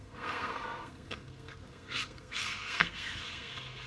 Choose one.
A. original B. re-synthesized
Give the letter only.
B